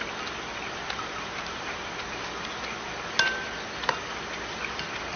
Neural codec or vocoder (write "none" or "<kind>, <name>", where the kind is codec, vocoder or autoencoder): none